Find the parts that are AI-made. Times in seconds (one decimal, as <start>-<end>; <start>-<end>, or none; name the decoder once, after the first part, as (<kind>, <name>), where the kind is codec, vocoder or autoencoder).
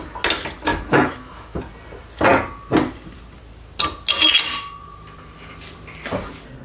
0.7-1.6 (autoencoder, DAC-VAE)